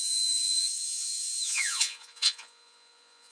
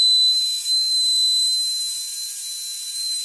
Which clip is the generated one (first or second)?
first